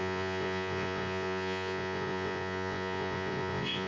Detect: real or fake fake